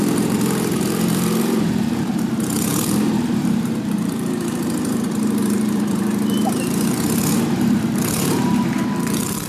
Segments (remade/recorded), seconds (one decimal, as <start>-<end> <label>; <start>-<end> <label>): 0.0-8.8 remade; 8.8-9.5 recorded